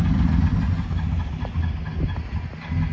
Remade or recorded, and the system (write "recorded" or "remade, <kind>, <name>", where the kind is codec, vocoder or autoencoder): recorded